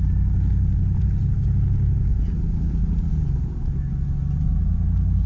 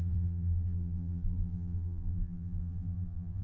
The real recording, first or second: first